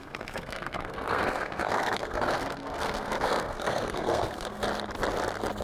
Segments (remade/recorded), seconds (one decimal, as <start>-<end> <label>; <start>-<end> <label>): 0.0-4.6 remade; 4.6-5.6 recorded